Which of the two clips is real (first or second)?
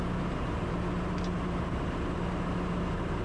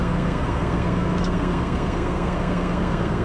first